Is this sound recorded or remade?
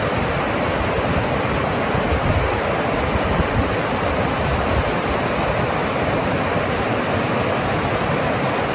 recorded